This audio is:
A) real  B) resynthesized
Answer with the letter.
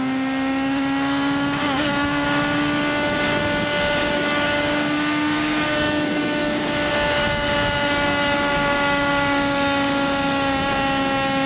B